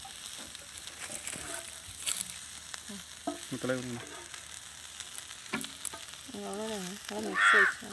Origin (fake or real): real